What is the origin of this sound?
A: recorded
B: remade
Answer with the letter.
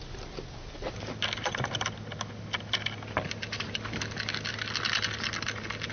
A